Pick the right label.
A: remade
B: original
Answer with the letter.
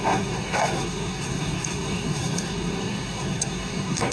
A